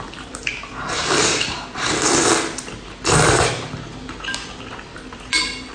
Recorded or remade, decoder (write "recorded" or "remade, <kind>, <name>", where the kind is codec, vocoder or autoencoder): recorded